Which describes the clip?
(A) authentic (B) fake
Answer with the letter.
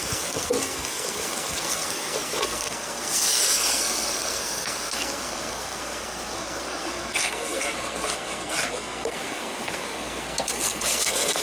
B